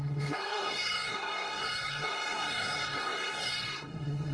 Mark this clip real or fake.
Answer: fake